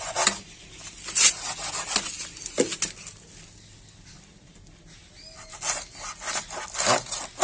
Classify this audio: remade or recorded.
recorded